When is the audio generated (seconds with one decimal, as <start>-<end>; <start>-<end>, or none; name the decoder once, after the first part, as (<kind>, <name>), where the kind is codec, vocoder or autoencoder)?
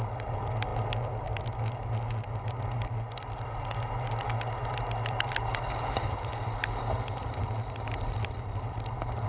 none